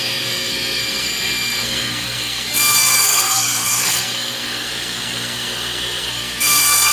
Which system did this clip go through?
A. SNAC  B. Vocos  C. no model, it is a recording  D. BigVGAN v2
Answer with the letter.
A